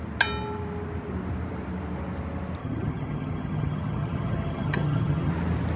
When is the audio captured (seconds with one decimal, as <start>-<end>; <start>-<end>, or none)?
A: 0.0-2.6; 5.3-5.8